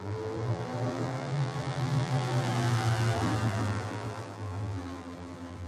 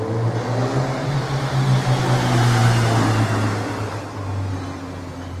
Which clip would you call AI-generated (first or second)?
first